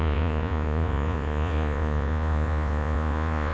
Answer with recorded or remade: remade